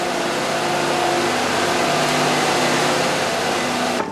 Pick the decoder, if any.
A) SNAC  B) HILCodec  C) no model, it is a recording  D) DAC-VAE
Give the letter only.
C